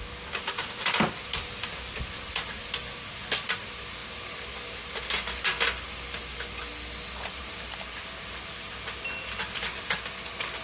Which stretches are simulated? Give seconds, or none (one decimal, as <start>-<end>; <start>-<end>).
none

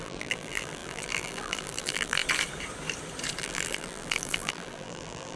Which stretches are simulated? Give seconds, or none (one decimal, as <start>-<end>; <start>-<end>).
0.0-2.2; 3.4-5.4

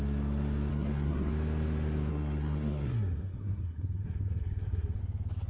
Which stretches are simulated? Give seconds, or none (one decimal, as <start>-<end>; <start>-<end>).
0.7-1.3; 2.1-5.0

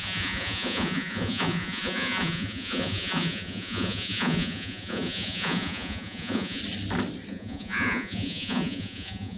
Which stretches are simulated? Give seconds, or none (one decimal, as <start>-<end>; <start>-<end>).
0.0-6.6; 7.3-9.4

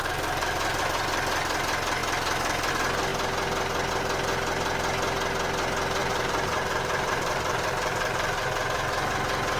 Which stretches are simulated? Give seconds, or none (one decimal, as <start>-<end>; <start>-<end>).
0.0-0.8; 6.0-9.1

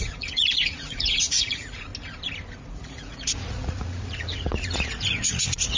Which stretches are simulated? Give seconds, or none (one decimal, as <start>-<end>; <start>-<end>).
0.0-1.9; 2.6-5.8

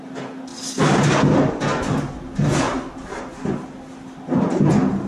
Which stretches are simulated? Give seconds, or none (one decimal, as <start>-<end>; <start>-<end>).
none

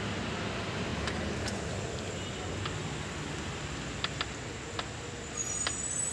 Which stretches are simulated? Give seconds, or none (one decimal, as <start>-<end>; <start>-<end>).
none